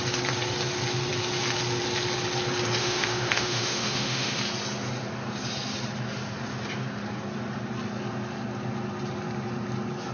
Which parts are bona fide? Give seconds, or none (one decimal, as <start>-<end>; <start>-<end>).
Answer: 0.0-2.8; 4.4-10.1